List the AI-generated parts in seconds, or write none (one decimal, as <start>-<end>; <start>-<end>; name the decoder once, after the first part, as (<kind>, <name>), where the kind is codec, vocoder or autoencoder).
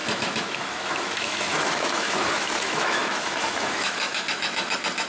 0.0-5.1 (autoencoder, DAC-VAE)